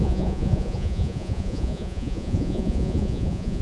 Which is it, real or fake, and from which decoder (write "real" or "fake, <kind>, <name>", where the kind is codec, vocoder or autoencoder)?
fake, vocoder, Vocos